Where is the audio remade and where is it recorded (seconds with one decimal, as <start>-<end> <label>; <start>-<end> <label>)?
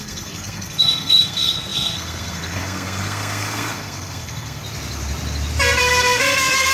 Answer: 0.0-4.6 remade; 4.6-5.8 recorded; 5.8-6.7 remade